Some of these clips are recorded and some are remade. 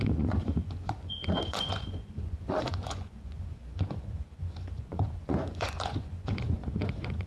remade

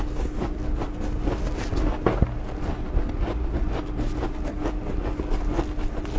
recorded